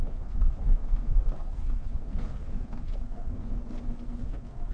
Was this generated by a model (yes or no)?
yes